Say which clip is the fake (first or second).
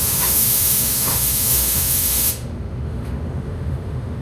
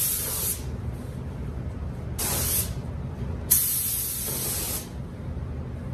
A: first